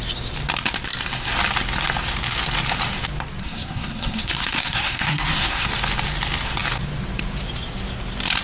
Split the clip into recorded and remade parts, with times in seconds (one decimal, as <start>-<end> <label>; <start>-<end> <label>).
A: 0.0-3.4 recorded; 3.4-5.7 remade; 5.7-8.4 recorded